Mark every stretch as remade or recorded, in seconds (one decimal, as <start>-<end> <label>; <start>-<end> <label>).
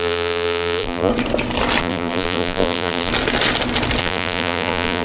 0.0-1.1 remade; 1.1-1.8 recorded; 1.8-3.1 remade; 3.1-4.0 recorded; 4.0-5.0 remade